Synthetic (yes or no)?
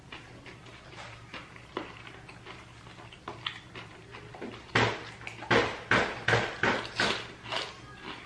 no